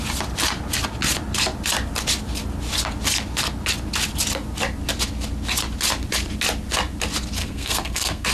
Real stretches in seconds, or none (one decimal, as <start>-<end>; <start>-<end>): 0.0-7.4